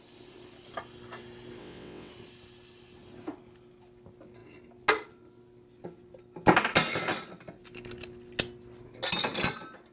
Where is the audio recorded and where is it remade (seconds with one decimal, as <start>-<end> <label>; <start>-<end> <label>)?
0.0-1.6 recorded; 1.6-2.1 remade; 2.1-9.9 recorded